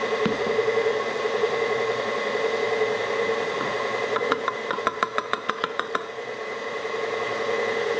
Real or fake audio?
fake